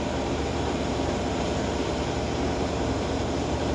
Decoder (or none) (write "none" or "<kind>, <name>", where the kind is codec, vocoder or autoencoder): vocoder, BigVGAN v2